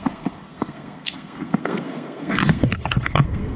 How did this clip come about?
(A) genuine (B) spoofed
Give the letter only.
B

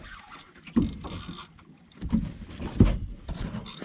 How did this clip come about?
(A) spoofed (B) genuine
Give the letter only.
B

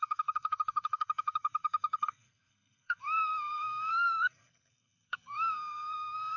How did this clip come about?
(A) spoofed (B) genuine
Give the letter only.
A